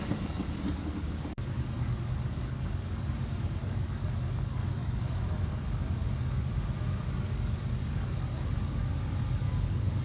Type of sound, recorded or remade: remade